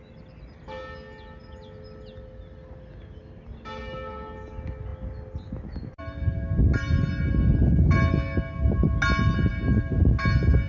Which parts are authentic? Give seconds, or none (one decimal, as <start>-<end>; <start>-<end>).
0.0-10.7